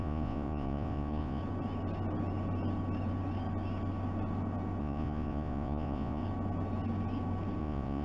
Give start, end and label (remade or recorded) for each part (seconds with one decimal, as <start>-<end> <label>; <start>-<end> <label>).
0.0-1.4 remade; 1.4-4.8 recorded; 4.8-6.2 remade; 6.2-7.6 recorded; 7.6-8.0 remade